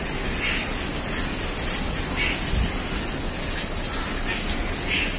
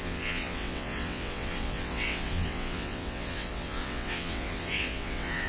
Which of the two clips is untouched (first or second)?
first